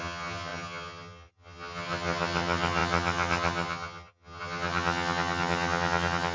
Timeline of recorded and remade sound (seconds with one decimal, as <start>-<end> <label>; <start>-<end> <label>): 0.0-6.3 remade